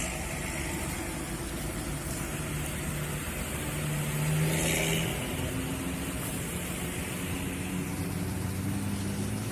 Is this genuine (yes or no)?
yes